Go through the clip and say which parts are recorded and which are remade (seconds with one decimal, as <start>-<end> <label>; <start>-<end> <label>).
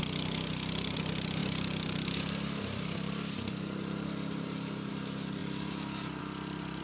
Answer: 0.0-6.8 recorded